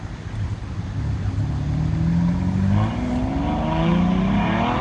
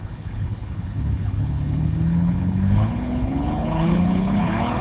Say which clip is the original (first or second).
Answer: first